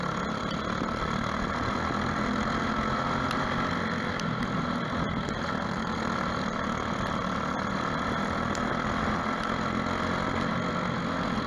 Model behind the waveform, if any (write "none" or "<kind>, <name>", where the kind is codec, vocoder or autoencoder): none